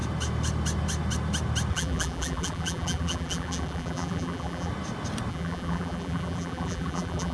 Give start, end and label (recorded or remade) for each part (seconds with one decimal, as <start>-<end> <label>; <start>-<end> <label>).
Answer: 0.0-1.7 recorded; 1.7-4.7 remade; 4.7-5.3 recorded; 5.3-7.3 remade